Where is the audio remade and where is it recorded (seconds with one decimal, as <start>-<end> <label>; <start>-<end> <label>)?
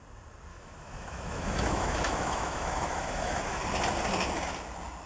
0.0-0.5 recorded; 0.5-3.6 remade; 3.6-5.1 recorded